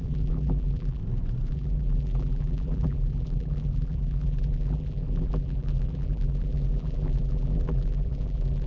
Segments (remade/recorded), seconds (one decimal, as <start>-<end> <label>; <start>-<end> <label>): 0.0-1.0 remade; 1.0-1.5 recorded; 1.5-8.7 remade